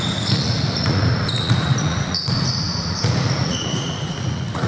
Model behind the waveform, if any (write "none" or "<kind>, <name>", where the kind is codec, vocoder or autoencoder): vocoder, Vocos